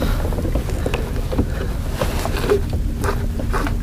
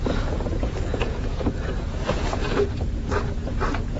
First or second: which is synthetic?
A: second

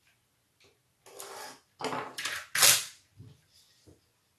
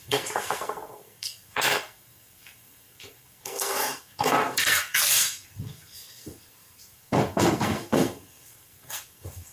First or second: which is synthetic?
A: second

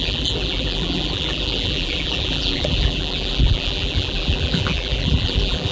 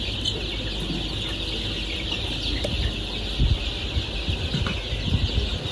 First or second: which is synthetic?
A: first